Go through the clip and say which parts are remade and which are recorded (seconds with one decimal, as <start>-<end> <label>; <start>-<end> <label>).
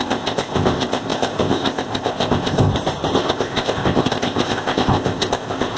0.0-2.7 remade; 2.7-3.2 recorded; 3.2-5.8 remade